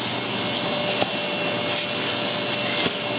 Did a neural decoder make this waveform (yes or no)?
no